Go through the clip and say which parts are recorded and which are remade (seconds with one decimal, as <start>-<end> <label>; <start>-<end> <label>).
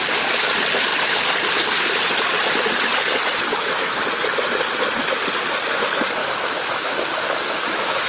0.0-3.5 recorded; 3.5-4.0 remade; 4.0-6.2 recorded; 6.2-8.1 remade